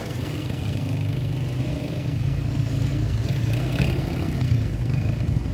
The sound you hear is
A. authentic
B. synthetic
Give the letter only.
B